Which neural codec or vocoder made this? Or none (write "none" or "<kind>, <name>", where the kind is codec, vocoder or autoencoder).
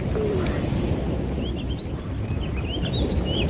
none